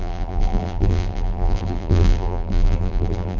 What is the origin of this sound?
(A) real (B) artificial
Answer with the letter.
B